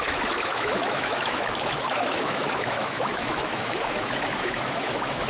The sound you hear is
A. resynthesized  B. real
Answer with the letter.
A